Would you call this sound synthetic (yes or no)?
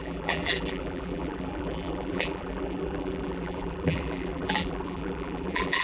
yes